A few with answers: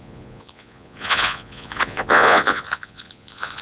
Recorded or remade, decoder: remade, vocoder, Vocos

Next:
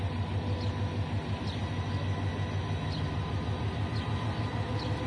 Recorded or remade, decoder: recorded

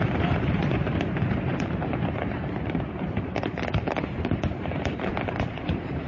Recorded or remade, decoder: remade, vocoder, BigVGAN v2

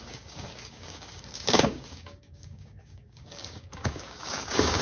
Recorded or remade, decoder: remade, codec, DAC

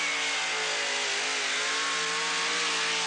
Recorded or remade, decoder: recorded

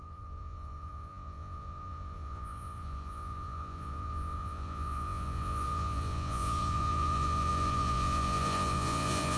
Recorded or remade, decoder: remade, vocoder, Vocos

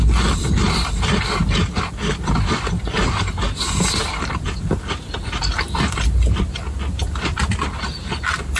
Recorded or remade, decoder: recorded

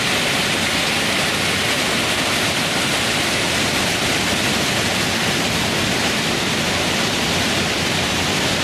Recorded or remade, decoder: recorded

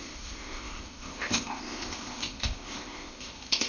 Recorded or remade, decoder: remade, codec, ZipCodec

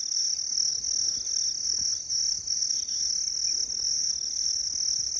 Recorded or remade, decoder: recorded